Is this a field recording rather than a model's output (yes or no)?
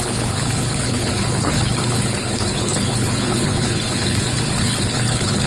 no